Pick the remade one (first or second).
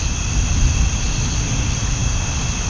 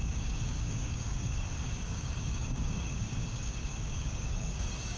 second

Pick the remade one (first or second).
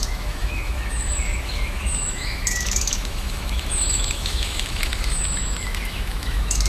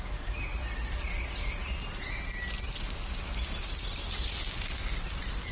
first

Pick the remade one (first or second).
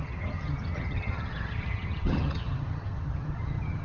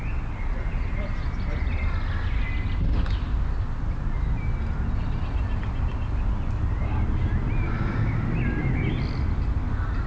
first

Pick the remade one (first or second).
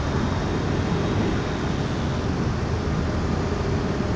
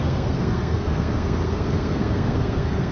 second